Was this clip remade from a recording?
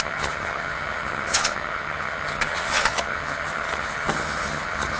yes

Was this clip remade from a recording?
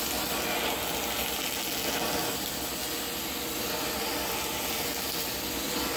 no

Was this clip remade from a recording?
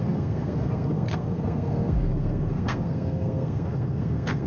yes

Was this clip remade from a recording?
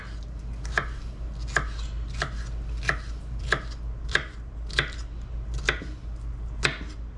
no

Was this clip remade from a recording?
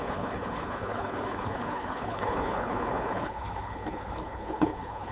yes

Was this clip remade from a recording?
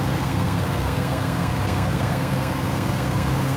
yes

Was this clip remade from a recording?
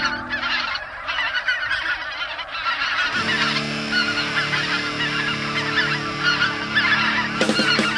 no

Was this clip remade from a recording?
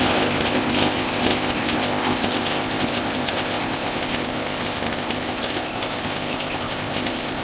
yes